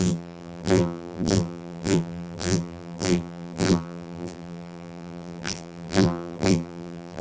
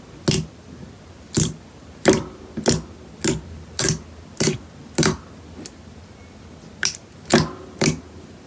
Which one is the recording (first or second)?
second